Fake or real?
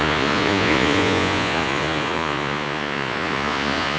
fake